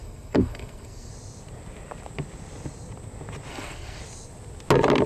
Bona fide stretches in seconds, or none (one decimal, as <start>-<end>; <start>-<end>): 1.1-3.5; 4.0-5.1

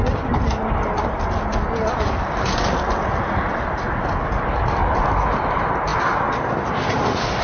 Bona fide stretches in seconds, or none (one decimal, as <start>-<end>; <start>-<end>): 0.0-7.4

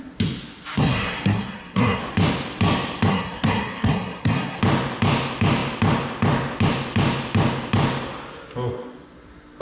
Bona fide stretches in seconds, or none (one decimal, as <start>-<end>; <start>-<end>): 0.0-0.8; 2.0-3.1; 4.6-9.6